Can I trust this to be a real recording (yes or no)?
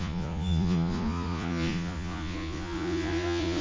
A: no